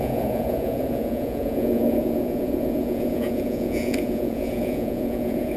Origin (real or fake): fake